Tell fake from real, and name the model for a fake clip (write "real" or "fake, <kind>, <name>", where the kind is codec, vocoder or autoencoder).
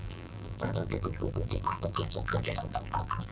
fake, vocoder, BigVGAN v2